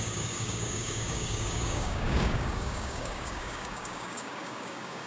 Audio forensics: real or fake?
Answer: fake